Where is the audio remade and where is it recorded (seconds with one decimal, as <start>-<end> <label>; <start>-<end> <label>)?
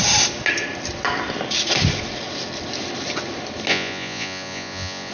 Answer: 0.0-3.7 recorded; 3.7-5.1 remade